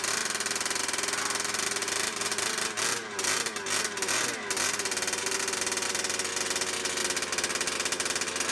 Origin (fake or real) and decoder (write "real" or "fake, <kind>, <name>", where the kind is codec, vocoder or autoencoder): real